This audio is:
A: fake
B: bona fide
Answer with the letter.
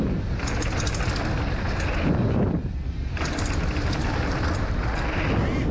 B